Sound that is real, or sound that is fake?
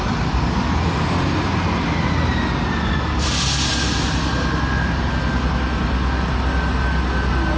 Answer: real